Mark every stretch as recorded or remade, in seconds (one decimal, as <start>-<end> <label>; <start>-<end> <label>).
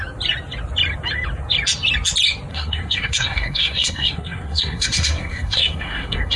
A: 0.0-2.5 recorded; 2.5-6.4 remade